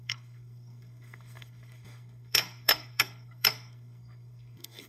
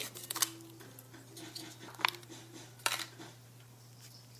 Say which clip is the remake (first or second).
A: first